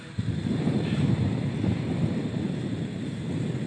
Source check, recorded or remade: recorded